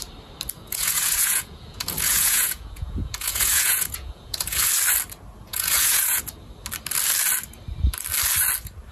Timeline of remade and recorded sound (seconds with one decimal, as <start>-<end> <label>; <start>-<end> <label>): 0.0-0.6 recorded; 0.6-4.7 remade; 4.7-5.5 recorded; 5.5-6.2 remade; 6.2-8.9 recorded